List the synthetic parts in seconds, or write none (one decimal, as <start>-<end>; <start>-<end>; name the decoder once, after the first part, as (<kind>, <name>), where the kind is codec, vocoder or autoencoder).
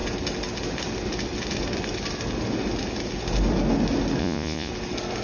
4.2-4.7 (vocoder, Vocos)